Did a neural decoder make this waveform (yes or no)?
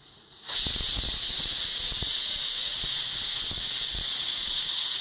yes